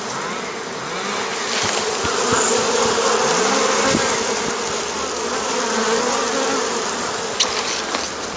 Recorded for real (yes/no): yes